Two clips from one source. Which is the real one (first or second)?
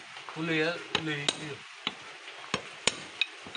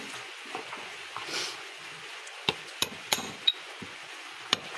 first